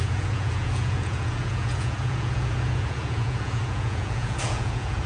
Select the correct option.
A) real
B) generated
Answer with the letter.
B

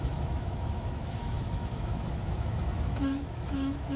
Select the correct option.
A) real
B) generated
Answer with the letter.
B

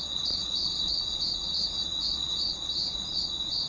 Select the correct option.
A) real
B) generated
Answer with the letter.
B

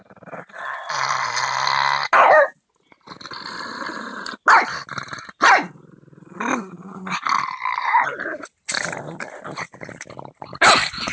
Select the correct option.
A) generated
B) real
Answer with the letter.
B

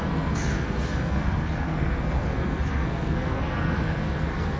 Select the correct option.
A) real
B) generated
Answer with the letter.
B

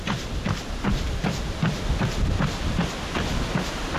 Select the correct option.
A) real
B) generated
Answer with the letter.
A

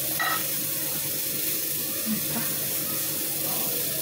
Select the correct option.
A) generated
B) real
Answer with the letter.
B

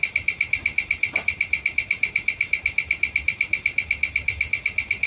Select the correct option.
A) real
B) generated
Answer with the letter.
A